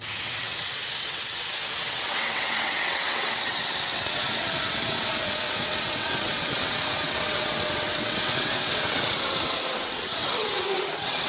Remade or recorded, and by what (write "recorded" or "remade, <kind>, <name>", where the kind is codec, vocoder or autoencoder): remade, vocoder, WaveNeXt